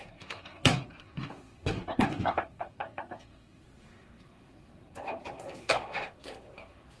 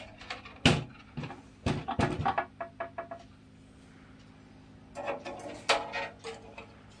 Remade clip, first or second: first